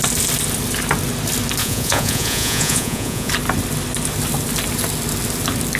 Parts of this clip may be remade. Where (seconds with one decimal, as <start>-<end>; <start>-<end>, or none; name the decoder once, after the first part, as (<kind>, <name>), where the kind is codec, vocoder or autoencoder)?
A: 1.6-3.3 (vocoder, Vocos)